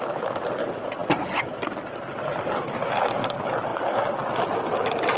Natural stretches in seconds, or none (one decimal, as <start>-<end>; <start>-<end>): 0.0-1.0; 2.5-3.7